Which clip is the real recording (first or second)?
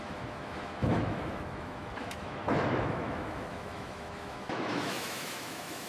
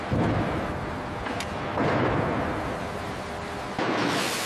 second